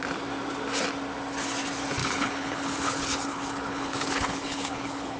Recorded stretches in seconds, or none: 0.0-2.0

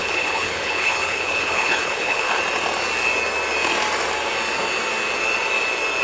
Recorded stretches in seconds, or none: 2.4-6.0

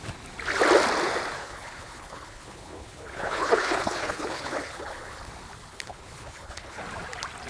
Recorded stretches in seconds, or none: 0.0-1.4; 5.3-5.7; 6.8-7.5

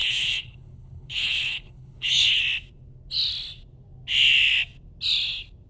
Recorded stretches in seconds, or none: 2.4-5.7

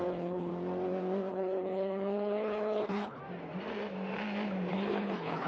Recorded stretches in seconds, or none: 0.5-1.3; 3.2-4.7

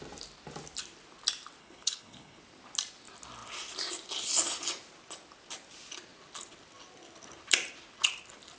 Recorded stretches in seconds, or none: 0.0-1.6; 2.4-8.6